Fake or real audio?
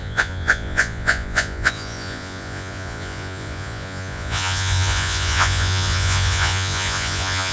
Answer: fake